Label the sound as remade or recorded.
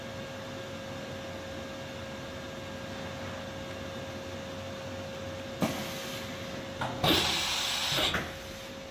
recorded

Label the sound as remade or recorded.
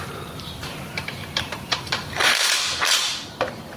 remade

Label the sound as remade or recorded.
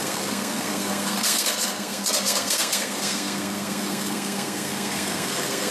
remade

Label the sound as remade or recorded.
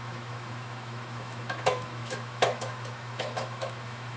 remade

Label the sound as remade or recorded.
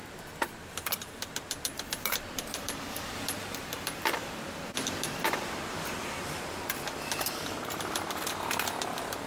remade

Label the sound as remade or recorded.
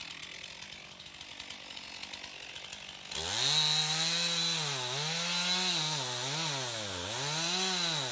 recorded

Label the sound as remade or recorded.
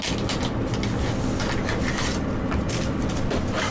recorded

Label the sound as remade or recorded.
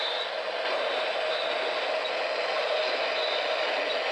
recorded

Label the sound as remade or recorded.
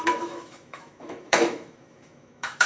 remade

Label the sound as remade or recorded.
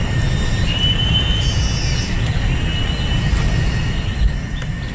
recorded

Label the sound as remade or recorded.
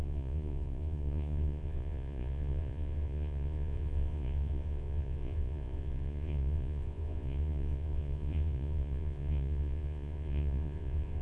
remade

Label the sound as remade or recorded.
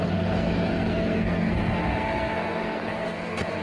remade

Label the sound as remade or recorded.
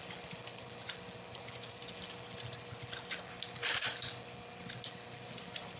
recorded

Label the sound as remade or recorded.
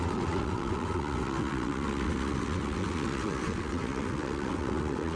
remade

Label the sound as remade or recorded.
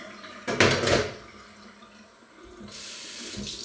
recorded